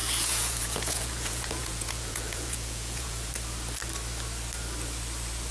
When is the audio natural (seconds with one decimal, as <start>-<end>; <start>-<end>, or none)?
3.3-5.5